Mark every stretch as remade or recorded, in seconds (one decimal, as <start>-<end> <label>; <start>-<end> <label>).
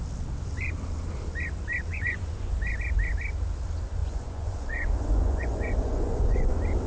0.0-1.9 recorded; 1.9-2.5 remade; 2.5-4.0 recorded; 4.0-6.5 remade; 6.5-6.9 recorded